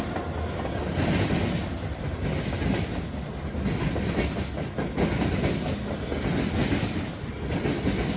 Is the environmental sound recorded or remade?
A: recorded